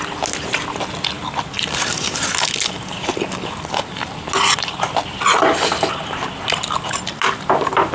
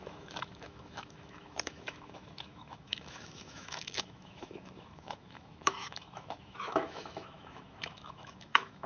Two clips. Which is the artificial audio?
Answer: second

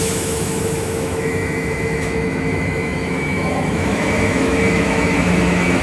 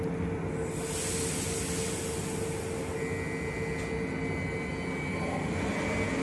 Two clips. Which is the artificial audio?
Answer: first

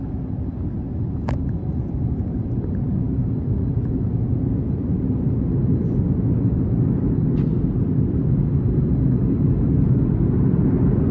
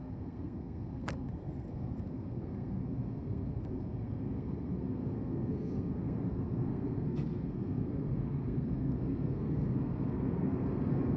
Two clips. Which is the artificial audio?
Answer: second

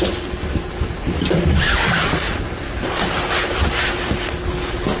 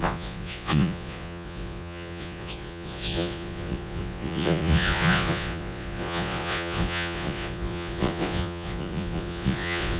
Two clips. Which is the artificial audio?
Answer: second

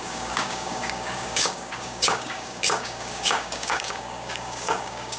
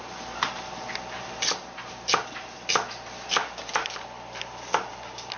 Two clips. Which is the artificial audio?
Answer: first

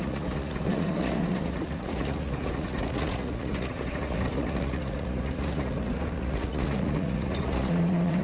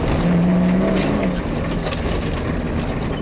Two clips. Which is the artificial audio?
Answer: first